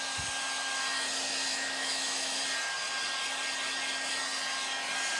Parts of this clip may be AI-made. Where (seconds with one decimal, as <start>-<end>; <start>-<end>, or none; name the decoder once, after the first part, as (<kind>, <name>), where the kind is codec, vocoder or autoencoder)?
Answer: 1.5-2.4 (autoencoder, DAC-VAE)